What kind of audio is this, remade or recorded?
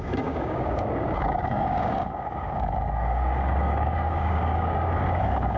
remade